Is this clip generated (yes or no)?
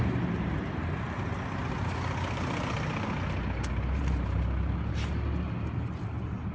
no